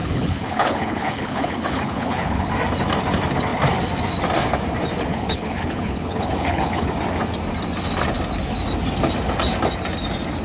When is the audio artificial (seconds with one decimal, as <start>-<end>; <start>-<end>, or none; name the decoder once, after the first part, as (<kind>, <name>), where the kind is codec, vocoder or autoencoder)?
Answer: 0.0-2.5 (codec, HILCodec); 5.1-6.9